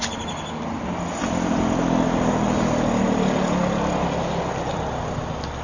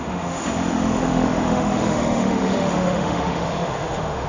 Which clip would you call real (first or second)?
first